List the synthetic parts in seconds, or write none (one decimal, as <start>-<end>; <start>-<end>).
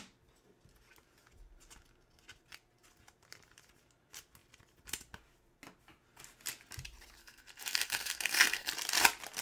7.2-8.7